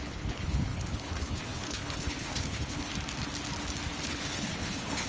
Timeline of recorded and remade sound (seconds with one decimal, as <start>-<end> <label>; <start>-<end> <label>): 0.0-2.9 remade; 2.9-4.1 recorded; 4.1-5.1 remade